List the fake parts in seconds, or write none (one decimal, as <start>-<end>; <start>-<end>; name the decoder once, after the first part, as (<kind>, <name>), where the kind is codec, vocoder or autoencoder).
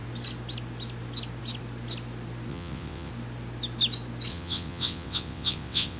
2.5-3.1 (vocoder, WaveNeXt); 4.3-6.0